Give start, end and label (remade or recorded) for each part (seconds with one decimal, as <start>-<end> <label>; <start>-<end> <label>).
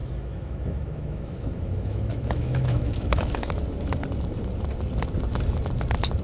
0.0-3.5 remade; 3.5-6.2 recorded